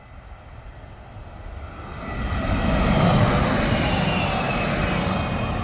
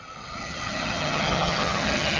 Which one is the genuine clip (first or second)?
first